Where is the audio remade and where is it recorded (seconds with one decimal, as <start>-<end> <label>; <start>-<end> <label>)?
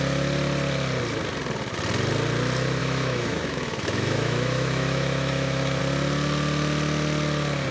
0.0-2.8 recorded; 2.8-5.8 remade; 5.8-7.7 recorded